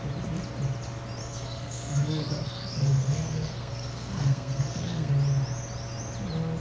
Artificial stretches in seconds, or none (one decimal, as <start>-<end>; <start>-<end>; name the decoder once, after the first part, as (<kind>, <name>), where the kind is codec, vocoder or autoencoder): 1.2-5.1 (codec, SNAC)